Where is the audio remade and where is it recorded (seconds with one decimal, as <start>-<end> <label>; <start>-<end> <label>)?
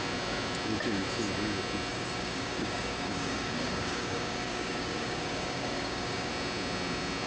0.0-1.9 recorded; 1.9-6.3 remade; 6.3-7.3 recorded